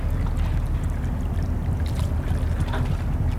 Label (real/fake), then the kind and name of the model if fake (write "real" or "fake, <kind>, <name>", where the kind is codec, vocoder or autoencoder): real